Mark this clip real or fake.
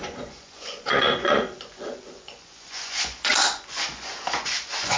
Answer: fake